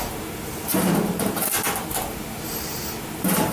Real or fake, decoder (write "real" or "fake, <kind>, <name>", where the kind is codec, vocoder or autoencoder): fake, vocoder, BigVGAN v2